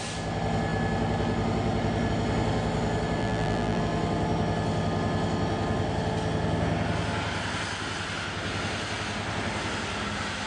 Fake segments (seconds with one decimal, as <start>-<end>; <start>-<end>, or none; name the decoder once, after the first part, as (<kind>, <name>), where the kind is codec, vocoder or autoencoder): 3.2-3.8 (vocoder, BigVGAN v2)